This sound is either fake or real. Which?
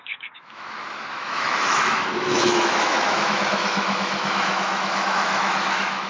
fake